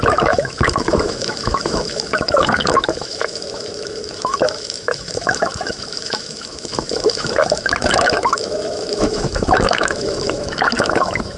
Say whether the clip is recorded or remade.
remade